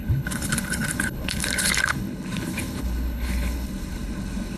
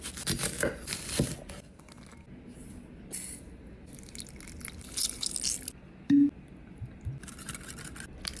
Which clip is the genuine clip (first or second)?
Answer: second